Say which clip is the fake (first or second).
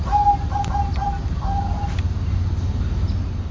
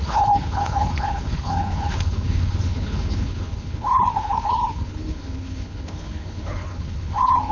second